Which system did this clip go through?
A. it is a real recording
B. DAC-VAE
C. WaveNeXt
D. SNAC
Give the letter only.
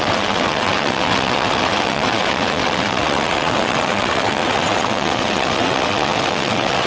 C